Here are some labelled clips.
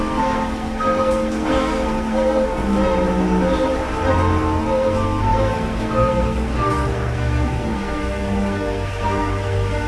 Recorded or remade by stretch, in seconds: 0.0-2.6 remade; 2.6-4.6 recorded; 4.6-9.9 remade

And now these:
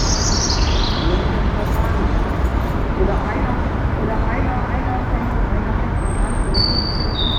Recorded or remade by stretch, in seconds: 0.0-2.5 remade; 2.5-6.9 recorded; 6.9-7.4 remade

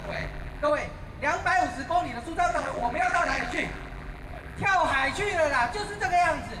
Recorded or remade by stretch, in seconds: 0.0-0.7 remade; 0.7-2.5 recorded; 2.5-4.6 remade; 4.6-6.6 recorded